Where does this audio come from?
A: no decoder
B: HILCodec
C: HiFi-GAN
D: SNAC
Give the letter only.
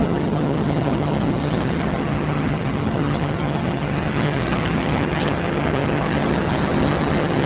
C